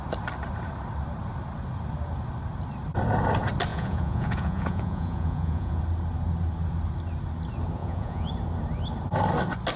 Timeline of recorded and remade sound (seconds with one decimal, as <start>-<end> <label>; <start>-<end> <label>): 0.0-3.7 recorded; 3.7-5.8 remade; 5.8-7.8 recorded; 7.8-8.3 remade; 8.3-9.8 recorded